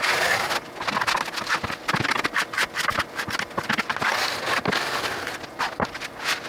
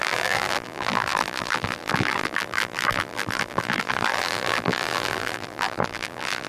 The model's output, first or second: second